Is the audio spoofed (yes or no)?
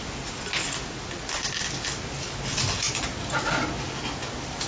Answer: no